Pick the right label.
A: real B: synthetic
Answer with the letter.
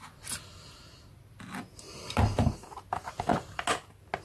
A